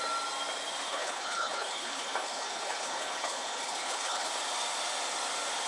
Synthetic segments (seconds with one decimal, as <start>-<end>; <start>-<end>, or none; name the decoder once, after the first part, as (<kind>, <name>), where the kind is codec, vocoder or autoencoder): 0.9-4.3 (codec, HILCodec)